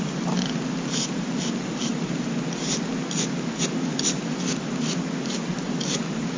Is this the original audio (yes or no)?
yes